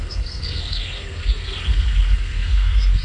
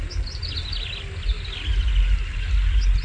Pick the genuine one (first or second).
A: second